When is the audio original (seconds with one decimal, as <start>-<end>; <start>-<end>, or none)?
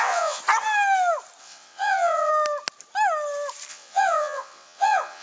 0.4-1.4; 2.3-3.7